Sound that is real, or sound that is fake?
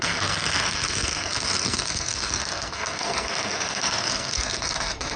fake